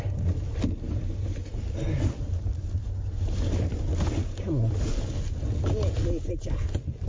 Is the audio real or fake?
real